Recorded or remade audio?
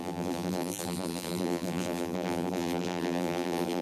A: remade